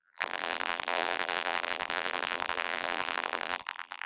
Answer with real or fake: fake